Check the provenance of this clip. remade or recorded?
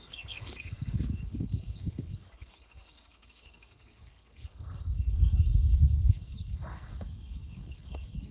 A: remade